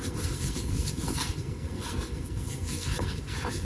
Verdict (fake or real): fake